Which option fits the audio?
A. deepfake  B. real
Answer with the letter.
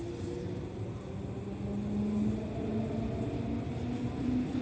B